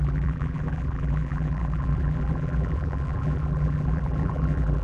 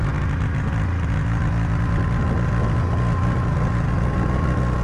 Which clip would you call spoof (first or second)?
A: first